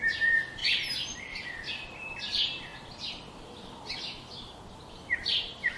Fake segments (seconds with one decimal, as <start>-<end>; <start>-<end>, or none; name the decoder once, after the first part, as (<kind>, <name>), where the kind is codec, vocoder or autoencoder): 0.6-1.2 (vocoder, BigVGAN v2)